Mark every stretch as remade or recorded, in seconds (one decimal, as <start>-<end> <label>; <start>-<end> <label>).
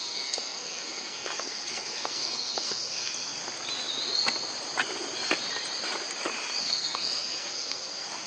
0.0-3.4 remade; 3.4-6.6 recorded; 6.6-8.3 remade